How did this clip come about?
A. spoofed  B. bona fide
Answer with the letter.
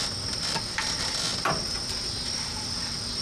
B